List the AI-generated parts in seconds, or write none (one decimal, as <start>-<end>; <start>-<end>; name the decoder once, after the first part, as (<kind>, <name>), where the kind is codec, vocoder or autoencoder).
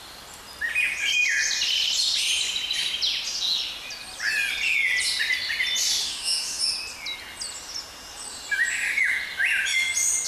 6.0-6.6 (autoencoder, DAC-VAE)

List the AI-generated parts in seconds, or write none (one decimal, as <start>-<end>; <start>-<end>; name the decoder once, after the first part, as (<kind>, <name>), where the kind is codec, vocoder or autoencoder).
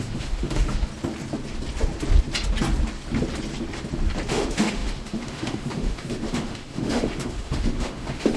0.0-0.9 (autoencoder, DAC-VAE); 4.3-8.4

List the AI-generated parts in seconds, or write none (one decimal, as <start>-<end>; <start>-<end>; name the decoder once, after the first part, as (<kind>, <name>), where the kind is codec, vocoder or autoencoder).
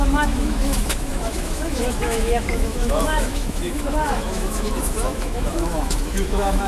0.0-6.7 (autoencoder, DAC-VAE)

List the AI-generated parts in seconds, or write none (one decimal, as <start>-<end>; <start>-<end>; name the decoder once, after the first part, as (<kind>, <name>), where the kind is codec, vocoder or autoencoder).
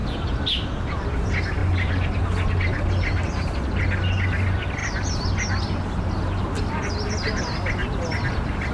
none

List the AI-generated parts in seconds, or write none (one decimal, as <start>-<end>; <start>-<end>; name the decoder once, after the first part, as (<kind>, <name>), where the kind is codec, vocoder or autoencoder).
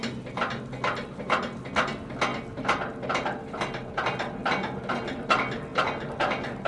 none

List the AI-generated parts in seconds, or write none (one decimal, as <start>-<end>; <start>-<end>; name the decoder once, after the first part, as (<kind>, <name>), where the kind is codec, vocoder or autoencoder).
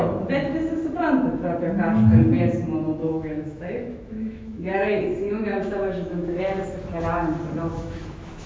3.0-5.0 (autoencoder, DAC-VAE); 5.5-6.4; 7.7-8.5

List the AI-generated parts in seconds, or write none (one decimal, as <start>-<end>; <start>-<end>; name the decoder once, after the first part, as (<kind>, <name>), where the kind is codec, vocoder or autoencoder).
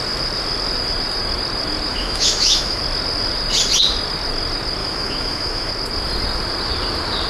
1.9-2.8 (autoencoder, DAC-VAE); 4.8-5.7